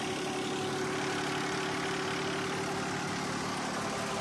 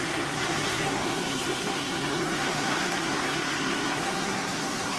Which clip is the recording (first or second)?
first